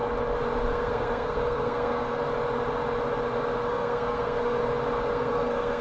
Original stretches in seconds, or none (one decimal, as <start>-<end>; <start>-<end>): 0.0-0.7; 2.2-3.7; 4.6-5.1